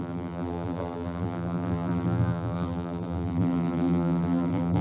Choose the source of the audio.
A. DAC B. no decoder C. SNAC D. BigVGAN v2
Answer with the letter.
D